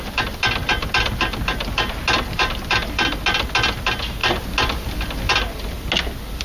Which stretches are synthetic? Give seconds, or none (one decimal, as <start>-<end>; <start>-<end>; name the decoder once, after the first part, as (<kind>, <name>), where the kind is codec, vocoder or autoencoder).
none